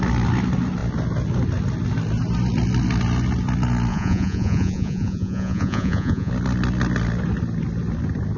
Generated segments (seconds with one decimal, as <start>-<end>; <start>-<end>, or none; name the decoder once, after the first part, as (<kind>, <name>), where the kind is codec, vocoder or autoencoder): 3.9-6.3 (vocoder, Vocos)